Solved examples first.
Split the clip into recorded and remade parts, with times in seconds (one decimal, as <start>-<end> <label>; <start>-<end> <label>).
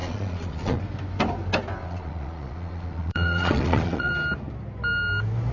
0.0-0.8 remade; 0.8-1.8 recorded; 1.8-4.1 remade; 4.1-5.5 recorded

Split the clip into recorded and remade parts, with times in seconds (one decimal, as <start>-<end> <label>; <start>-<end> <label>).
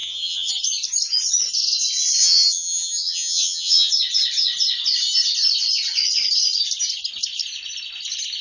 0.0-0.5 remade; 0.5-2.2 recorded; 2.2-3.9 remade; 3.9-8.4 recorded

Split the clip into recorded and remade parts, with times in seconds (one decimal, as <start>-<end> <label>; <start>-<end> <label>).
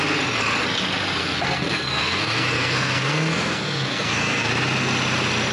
0.0-1.2 recorded; 1.2-4.5 remade; 4.5-5.5 recorded